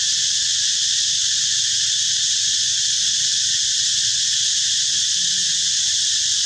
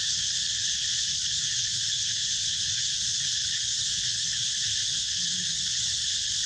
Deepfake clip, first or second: second